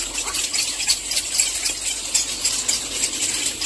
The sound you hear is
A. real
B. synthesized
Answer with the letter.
B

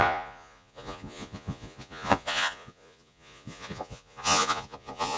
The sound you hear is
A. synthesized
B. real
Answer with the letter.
A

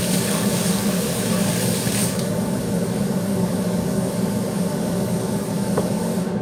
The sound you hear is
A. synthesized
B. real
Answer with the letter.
A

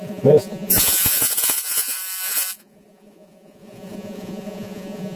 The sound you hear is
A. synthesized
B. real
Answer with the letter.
A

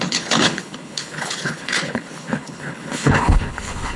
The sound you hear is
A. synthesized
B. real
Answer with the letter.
A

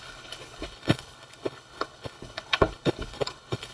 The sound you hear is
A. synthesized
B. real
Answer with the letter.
A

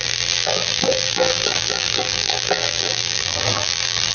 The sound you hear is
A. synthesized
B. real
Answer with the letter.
A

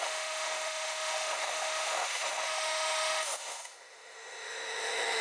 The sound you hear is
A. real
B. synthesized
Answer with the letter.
B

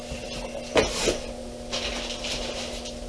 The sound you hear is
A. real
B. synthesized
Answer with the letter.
A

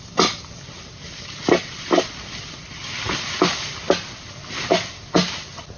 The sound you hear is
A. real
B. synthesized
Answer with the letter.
A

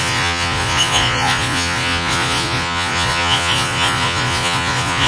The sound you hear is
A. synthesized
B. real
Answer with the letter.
A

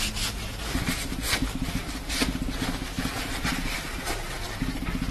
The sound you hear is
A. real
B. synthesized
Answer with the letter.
A